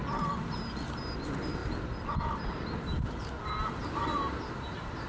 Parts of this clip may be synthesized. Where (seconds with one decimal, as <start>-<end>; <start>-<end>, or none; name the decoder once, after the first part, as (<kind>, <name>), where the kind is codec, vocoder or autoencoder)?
none